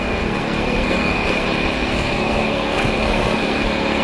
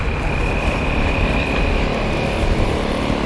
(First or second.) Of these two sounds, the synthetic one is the first